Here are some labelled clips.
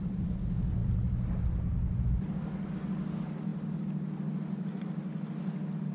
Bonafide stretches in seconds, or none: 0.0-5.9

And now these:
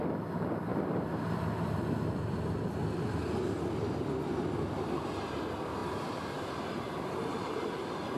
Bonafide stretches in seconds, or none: 0.0-0.7; 3.4-5.8; 6.3-8.2

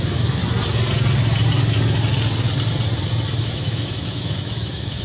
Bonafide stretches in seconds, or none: 0.4-3.4